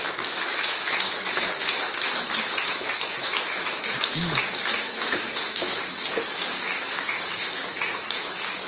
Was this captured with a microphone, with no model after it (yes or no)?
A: no